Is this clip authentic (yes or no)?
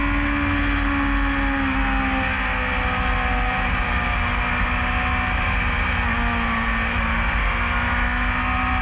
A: yes